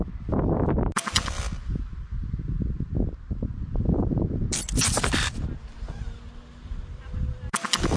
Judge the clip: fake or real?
real